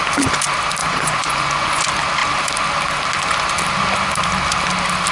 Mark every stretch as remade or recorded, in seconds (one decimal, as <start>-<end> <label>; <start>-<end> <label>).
0.0-0.8 recorded; 0.8-1.8 remade; 1.8-5.1 recorded